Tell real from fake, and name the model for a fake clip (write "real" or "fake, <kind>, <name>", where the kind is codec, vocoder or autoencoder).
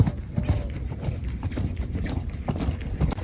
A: real